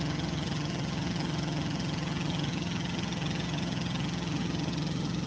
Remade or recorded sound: remade